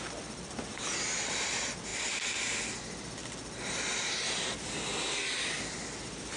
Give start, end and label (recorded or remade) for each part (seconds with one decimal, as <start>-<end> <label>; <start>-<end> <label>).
0.0-6.4 recorded